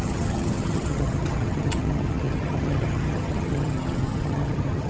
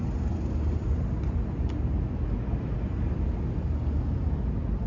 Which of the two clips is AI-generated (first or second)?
first